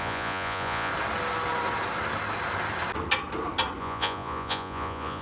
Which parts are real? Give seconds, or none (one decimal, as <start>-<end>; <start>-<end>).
0.9-3.8